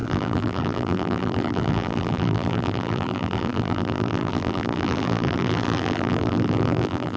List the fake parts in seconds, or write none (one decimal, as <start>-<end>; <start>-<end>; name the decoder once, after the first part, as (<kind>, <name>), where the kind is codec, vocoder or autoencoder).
0.0-7.2 (vocoder, BigVGAN v2)

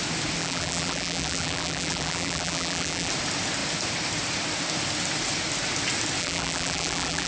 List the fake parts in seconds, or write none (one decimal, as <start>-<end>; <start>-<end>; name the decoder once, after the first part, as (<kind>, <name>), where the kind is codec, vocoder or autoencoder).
0.4-3.1 (vocoder, BigVGAN v2); 6.2-7.3